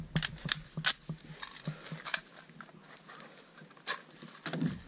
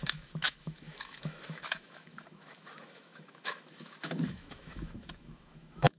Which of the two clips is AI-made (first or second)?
second